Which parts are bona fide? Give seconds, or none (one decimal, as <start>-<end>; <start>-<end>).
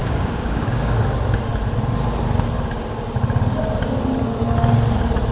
1.0-5.3